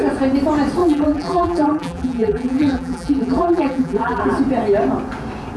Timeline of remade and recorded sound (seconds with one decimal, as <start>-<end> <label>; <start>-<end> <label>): 0.0-0.8 recorded; 0.8-4.2 remade; 4.2-5.6 recorded